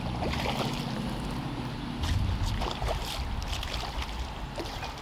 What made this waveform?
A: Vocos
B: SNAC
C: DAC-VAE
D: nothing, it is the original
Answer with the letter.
D